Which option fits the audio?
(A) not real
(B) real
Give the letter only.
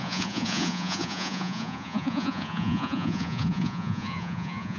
A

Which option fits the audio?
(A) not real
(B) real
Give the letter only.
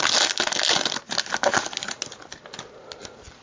B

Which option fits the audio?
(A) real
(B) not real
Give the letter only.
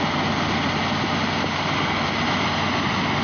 A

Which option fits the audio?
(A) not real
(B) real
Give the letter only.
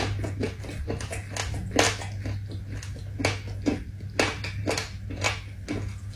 B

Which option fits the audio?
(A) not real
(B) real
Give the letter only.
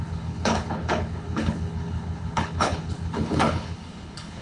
A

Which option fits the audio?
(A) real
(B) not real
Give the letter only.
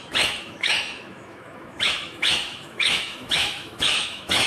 B